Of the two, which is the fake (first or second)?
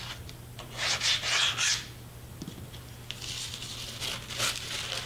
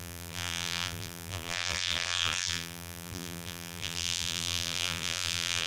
second